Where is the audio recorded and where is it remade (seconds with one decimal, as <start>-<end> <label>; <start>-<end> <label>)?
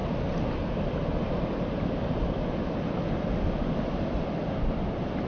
0.0-5.3 recorded